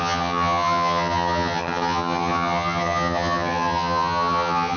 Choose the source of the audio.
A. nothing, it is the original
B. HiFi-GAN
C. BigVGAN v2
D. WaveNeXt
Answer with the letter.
B